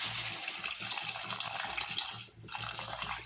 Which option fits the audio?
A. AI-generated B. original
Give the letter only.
B